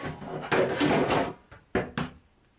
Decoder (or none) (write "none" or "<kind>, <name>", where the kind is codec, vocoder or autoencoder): none